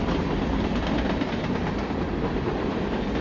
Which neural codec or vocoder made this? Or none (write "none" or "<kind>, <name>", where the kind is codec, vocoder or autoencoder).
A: none